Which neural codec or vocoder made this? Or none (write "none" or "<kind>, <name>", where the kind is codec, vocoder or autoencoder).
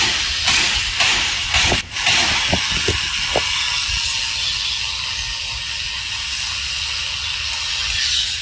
none